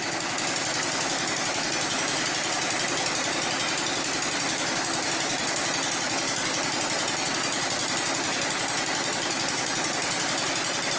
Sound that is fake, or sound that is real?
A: fake